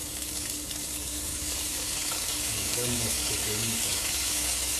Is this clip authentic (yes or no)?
no